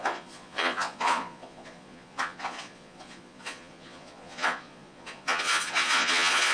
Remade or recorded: remade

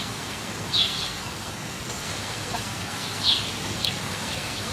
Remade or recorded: remade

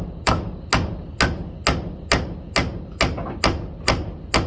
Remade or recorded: recorded